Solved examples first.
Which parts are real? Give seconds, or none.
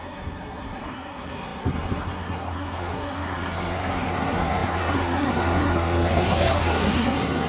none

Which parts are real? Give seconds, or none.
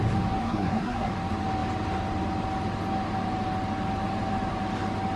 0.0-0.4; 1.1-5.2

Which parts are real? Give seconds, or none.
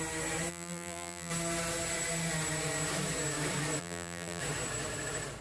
0.0-0.5; 1.3-3.8; 4.4-5.4